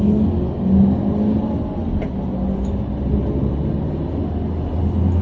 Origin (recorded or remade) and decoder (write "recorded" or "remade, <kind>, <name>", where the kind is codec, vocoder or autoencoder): recorded